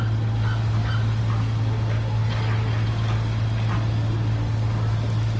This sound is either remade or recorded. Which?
recorded